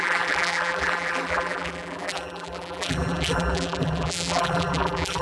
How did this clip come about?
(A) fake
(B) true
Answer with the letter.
A